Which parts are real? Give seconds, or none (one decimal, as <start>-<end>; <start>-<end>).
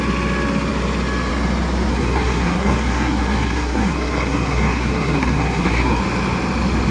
0.0-1.9; 6.0-6.9